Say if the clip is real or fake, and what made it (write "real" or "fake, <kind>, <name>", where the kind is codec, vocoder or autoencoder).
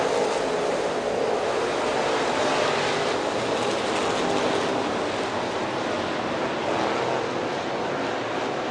real